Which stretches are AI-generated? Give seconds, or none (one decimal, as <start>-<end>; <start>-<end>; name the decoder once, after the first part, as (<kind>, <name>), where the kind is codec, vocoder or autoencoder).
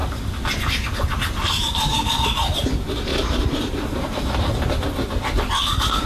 3.1-4.7 (vocoder, BigVGAN v2)